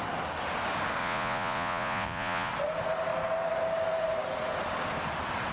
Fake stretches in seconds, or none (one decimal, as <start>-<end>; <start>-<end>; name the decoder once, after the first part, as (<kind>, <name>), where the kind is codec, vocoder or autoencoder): 1.0-2.5 (vocoder, Vocos)